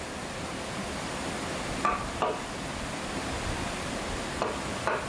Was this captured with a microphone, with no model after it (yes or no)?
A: yes